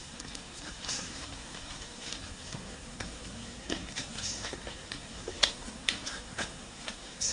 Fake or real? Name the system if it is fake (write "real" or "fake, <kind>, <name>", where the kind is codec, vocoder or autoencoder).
fake, codec, SNAC